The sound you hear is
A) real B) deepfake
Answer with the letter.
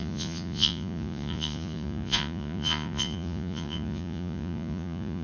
B